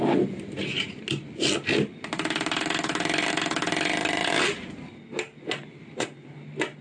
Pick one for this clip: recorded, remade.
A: recorded